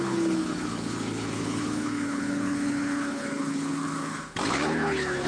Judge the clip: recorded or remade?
remade